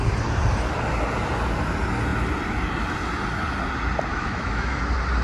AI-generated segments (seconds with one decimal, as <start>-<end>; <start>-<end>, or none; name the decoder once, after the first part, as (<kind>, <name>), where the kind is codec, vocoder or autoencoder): 4.1-4.8 (autoencoder, DAC-VAE)